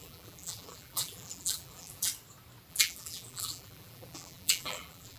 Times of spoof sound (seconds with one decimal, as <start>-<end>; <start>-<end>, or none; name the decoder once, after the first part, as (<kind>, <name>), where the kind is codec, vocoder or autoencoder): 0.0-2.1 (vocoder, BigVGAN v2); 2.7-5.2